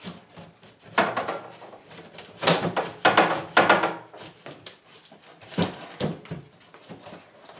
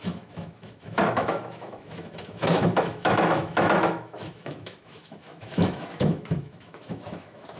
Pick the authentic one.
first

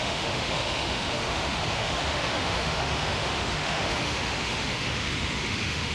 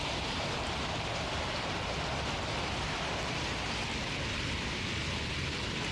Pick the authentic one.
second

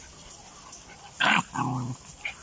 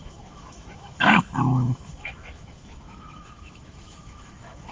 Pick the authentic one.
first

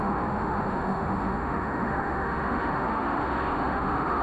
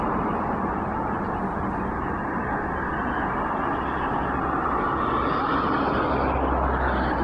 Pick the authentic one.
second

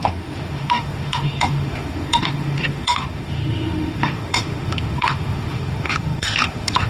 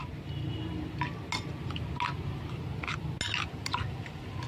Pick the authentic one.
second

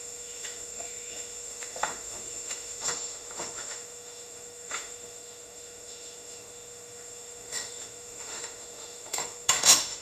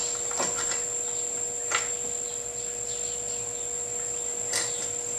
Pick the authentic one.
second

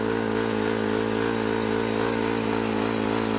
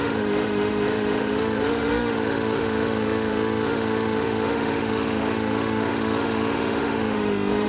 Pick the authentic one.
first